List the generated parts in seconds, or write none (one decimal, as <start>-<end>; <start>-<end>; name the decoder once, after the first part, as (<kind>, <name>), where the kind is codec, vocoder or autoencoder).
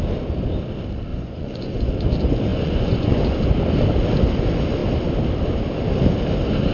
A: 1.1-1.9 (vocoder, Vocos); 2.5-3.2